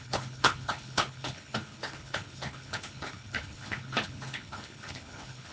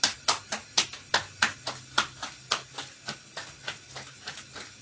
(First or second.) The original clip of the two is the second